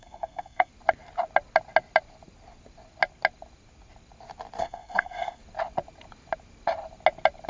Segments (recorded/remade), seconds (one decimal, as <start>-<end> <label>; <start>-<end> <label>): 0.0-0.7 remade; 0.7-4.6 recorded; 4.6-5.4 remade; 5.4-7.5 recorded